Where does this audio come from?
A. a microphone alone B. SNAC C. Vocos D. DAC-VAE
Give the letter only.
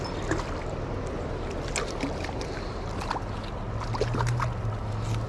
A